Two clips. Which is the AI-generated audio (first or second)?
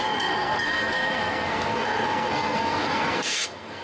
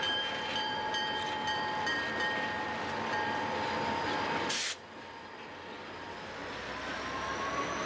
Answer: first